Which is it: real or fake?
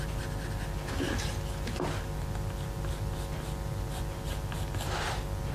real